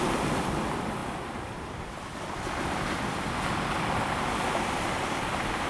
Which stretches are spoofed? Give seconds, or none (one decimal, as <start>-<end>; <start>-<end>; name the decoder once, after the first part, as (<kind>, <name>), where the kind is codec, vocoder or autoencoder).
1.0-3.1 (vocoder, BigVGAN v2)